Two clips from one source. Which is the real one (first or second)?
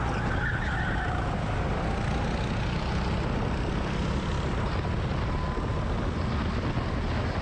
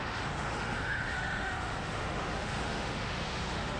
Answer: first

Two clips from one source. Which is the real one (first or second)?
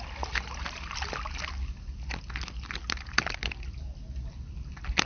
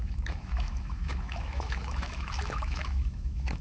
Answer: first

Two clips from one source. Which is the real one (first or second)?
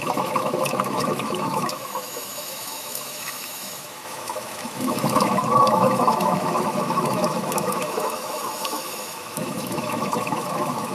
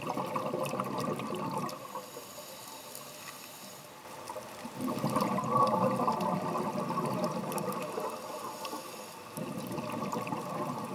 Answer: second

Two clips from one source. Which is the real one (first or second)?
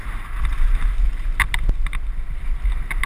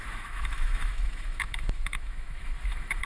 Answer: first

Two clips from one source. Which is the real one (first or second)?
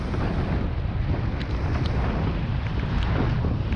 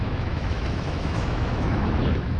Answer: first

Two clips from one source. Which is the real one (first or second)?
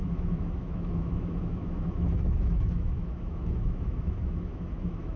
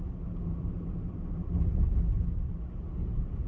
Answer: second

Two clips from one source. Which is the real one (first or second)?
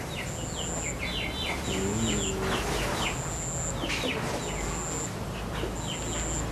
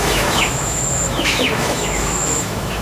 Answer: first